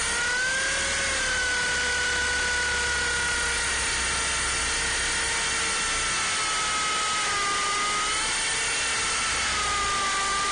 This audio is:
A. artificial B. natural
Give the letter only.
B